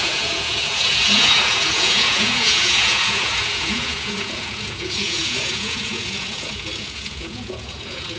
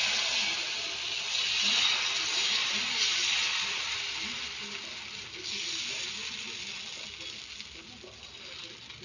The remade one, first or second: first